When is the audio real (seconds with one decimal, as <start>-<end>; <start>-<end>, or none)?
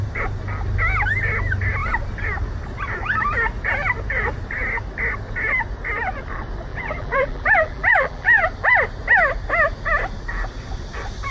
0.0-6.7; 8.4-11.3